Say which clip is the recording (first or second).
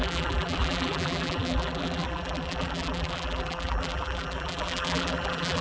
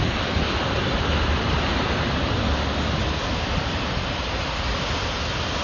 second